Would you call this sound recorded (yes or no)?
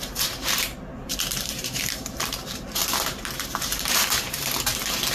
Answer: no